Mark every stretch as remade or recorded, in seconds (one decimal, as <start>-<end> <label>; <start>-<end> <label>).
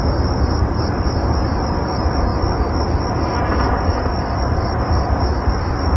0.0-2.3 remade; 2.3-4.2 recorded; 4.2-6.0 remade